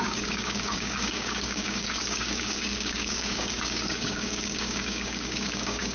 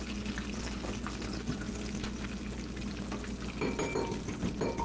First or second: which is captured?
second